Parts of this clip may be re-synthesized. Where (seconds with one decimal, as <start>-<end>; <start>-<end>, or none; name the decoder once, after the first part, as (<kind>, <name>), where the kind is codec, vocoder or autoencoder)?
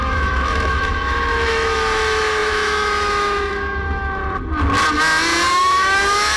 0.0-4.2 (autoencoder, DAC-VAE); 5.5-6.4